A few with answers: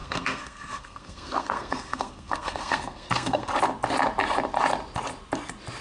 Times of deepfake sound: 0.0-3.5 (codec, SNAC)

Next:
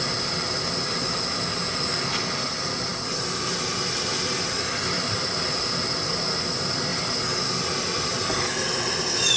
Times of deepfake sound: none

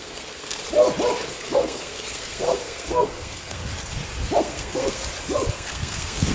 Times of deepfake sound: 0.0-0.6 (codec, SNAC); 1.3-3.6; 4.4-5.0; 5.5-6.3

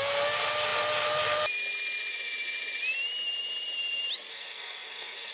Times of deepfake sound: 4.3-5.3 (codec, SNAC)

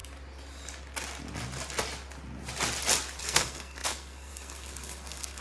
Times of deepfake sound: 3.2-5.4 (codec, SNAC)